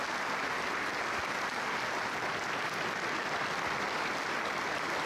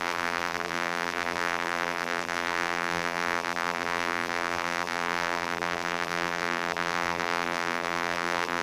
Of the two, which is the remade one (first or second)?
second